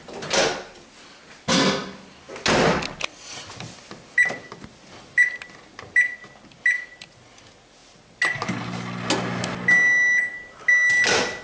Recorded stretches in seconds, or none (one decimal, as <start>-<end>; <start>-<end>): 0.0-11.4